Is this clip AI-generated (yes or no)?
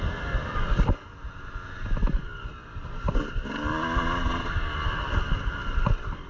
no